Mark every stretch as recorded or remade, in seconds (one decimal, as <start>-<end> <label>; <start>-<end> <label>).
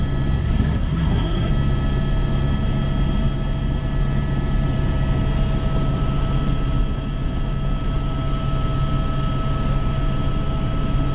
0.0-0.4 recorded; 0.4-1.5 remade; 1.5-11.1 recorded